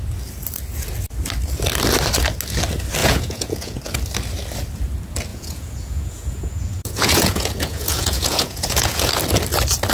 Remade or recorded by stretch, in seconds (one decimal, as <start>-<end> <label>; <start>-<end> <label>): 0.0-3.0 recorded; 3.0-3.8 remade; 3.8-5.3 recorded; 5.3-9.1 remade; 9.1-9.9 recorded